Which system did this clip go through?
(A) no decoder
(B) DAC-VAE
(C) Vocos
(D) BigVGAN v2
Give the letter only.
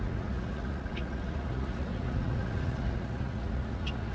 C